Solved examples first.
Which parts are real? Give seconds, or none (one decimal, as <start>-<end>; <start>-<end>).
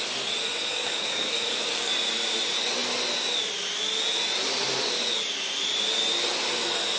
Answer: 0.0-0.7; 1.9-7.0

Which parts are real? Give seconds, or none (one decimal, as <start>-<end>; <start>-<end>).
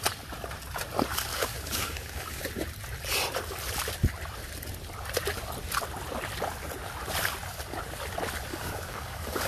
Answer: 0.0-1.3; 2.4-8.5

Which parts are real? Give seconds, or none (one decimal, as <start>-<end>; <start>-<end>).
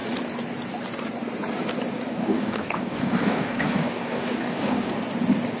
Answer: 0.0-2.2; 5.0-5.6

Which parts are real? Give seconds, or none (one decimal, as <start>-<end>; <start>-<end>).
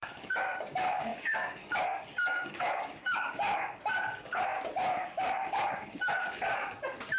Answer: none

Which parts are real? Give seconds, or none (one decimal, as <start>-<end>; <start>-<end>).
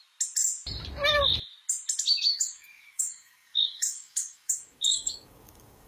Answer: 0.0-2.3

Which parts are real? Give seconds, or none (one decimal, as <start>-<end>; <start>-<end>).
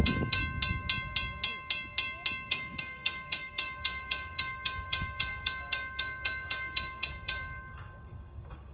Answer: 0.4-2.5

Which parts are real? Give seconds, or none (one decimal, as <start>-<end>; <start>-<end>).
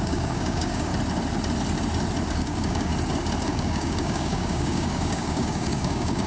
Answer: 0.9-2.3; 2.9-3.4